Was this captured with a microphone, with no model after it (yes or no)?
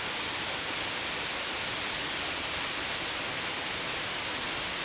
yes